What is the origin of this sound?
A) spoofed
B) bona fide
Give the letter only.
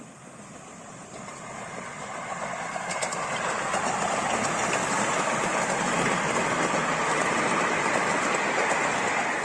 B